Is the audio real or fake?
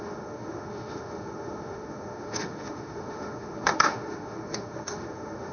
fake